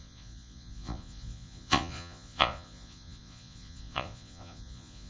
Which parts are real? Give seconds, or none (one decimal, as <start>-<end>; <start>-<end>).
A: none